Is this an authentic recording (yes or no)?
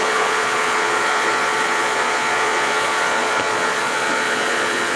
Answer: no